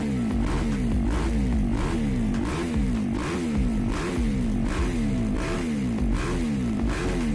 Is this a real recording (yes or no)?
yes